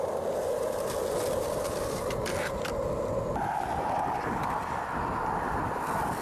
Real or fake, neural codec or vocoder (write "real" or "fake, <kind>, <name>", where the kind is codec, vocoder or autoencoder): real